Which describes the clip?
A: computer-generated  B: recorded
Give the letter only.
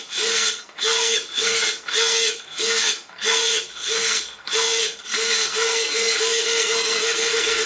A